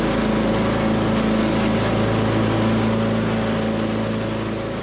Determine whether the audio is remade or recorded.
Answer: recorded